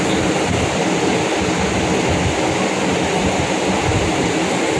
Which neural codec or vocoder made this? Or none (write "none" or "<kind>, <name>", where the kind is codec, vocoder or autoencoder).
none